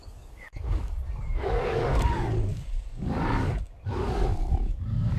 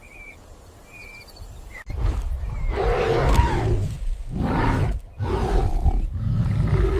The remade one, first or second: first